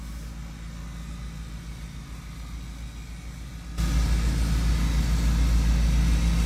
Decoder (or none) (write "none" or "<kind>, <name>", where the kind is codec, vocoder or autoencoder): none